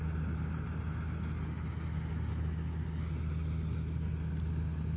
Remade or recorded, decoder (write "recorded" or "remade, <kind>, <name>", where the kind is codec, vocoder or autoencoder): recorded